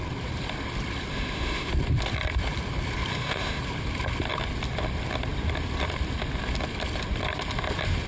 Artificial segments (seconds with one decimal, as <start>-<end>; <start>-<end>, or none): 1.1-1.7; 3.1-3.6